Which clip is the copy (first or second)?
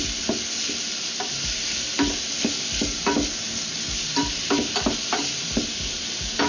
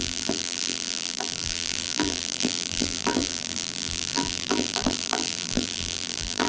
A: second